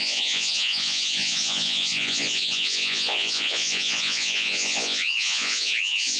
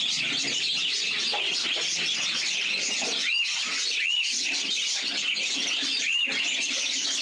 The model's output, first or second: first